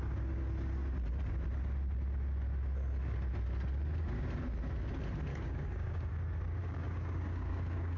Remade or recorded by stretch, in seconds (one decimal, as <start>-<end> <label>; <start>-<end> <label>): 0.0-5.3 recorded; 5.3-6.1 remade; 6.1-6.6 recorded; 6.6-8.0 remade